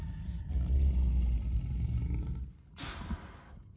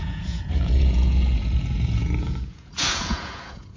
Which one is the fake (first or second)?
second